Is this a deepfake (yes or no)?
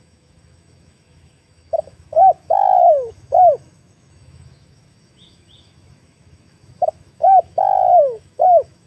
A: yes